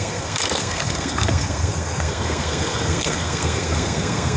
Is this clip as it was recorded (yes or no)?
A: no